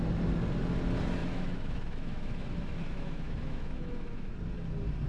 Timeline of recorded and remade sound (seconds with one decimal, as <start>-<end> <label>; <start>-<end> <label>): 0.0-1.2 recorded; 1.2-4.3 remade; 4.3-5.1 recorded